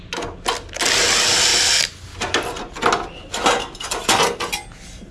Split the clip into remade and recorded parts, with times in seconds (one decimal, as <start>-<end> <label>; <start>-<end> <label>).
0.0-5.1 recorded